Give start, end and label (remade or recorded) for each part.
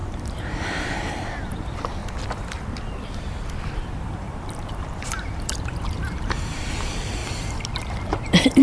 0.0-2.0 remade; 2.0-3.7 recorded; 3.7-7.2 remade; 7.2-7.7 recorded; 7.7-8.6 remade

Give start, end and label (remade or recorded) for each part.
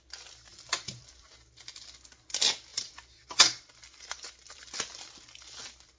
0.0-0.5 recorded; 0.5-1.6 remade; 1.6-2.7 recorded; 2.7-5.0 remade; 5.0-6.0 recorded